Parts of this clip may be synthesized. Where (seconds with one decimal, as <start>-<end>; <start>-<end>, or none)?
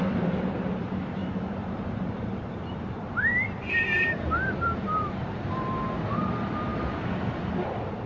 1.2-5.2